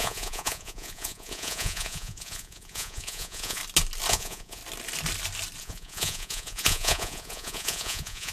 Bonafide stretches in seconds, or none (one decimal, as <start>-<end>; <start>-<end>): 3.6-4.1; 4.6-5.6